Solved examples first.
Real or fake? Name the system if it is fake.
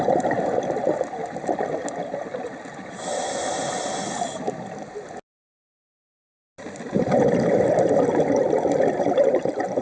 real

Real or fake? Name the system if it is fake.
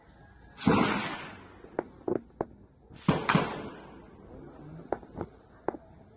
real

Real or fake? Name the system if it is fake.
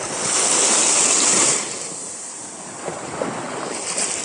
real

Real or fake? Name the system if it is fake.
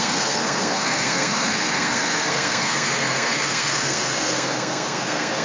fake, codec, SNAC